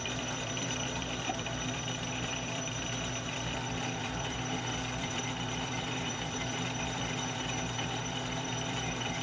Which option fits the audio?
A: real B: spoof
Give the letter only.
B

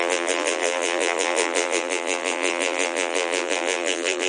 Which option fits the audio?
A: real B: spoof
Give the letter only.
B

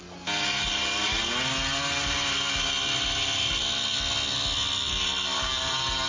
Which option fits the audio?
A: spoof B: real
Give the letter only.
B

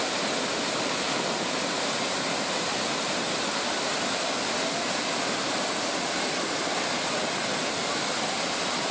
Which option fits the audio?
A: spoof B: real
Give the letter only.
B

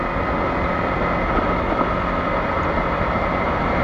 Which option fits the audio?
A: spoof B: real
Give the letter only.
B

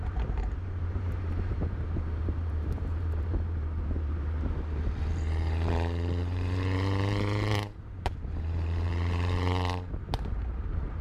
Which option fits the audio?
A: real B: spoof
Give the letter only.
B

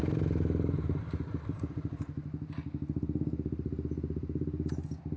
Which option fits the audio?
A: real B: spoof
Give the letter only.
A